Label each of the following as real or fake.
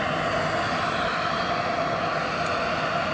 real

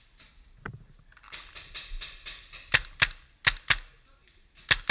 real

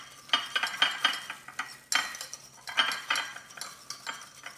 real